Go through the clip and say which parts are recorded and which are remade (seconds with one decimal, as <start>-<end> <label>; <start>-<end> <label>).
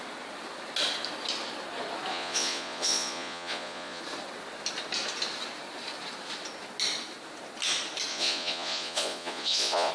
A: 0.0-2.1 recorded; 2.1-4.0 remade; 4.0-8.1 recorded; 8.1-9.9 remade